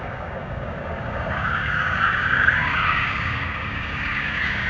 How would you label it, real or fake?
fake